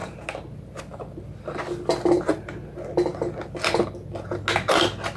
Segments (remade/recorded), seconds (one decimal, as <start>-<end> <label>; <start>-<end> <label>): 0.0-5.2 recorded